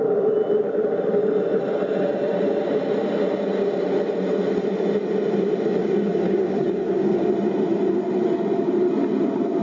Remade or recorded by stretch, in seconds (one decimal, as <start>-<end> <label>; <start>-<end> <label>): 0.0-5.8 recorded; 5.8-7.3 remade; 7.3-9.6 recorded